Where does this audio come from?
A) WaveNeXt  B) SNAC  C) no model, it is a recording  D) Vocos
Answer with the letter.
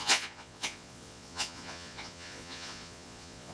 D